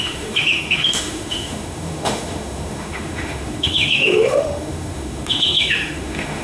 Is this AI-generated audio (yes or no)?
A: yes